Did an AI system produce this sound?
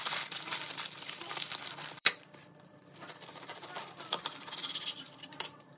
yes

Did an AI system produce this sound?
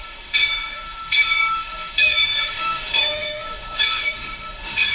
yes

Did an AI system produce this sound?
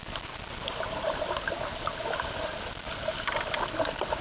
no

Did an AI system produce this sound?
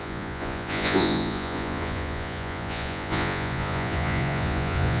yes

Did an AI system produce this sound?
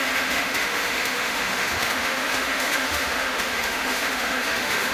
yes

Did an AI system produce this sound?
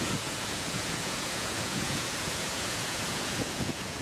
yes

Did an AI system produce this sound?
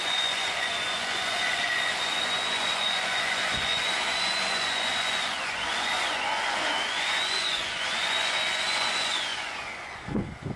yes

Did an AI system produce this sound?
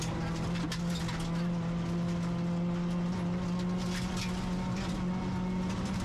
no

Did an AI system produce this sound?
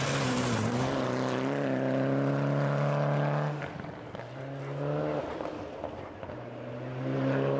no